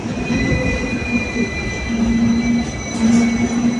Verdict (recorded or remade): recorded